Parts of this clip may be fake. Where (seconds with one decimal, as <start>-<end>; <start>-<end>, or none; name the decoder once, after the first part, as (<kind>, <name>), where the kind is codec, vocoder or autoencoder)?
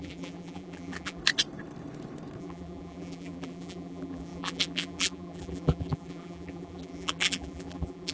0.0-1.2 (vocoder, BigVGAN v2); 2.4-8.1